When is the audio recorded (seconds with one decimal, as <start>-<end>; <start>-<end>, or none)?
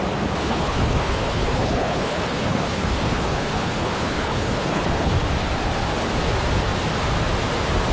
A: 0.0-0.4; 5.1-7.9